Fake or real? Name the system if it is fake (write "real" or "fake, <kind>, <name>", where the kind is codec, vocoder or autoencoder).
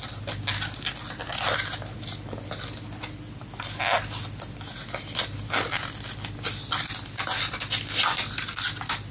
real